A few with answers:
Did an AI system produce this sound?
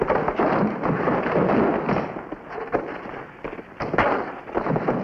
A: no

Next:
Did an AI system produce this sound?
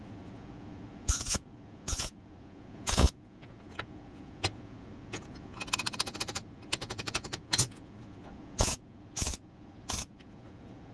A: yes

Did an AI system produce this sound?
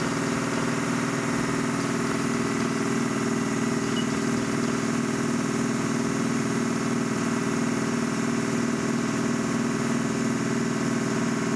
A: no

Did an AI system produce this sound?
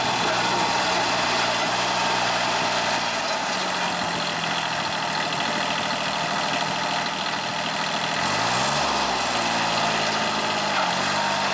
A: no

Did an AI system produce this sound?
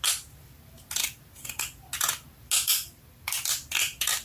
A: no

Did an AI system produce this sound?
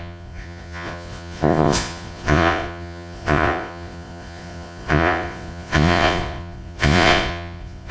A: yes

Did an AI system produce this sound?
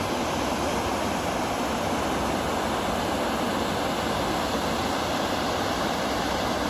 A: no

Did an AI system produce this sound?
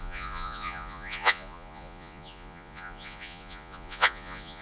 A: yes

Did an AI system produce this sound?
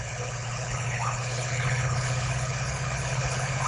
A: yes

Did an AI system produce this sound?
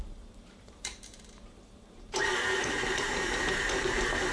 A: yes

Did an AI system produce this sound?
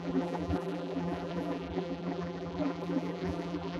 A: yes